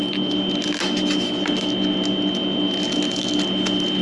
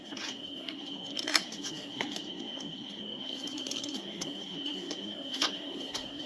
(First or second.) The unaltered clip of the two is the first